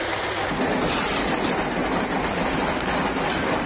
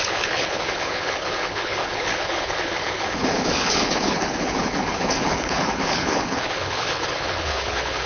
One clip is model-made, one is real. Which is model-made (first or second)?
second